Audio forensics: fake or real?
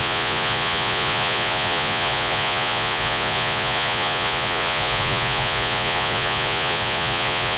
fake